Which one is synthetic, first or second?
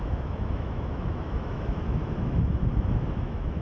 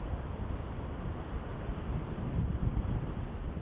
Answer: first